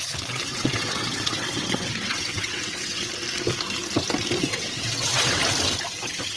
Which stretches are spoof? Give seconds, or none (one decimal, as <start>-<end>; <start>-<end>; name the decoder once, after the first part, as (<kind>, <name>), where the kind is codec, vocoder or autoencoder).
0.0-3.1 (vocoder, WaveNeXt); 4.4-5.4; 6.0-6.4